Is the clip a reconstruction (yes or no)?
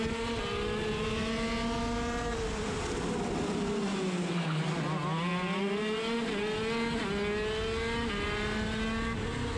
no